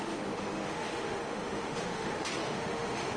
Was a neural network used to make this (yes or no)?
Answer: yes